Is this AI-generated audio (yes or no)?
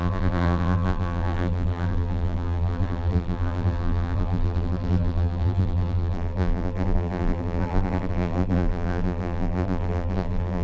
yes